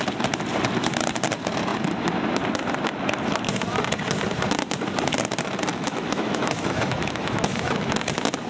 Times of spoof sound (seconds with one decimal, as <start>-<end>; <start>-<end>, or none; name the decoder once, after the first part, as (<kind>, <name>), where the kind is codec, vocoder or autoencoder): 5.7-7.7 (autoencoder, DAC-VAE)